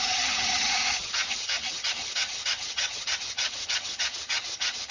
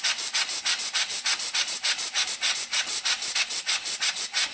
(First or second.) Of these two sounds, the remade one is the first